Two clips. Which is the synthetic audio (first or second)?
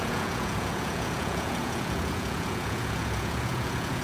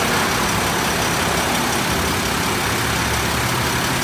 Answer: first